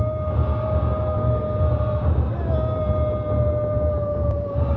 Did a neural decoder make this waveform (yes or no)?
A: no